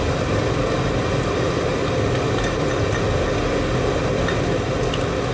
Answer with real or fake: real